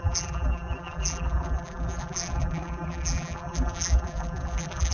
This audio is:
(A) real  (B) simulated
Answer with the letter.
B